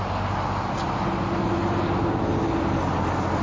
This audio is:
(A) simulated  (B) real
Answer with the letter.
B